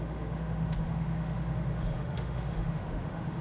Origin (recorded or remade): remade